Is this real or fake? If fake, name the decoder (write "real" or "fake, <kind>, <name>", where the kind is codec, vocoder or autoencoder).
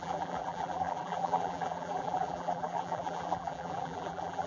fake, vocoder, BigVGAN v2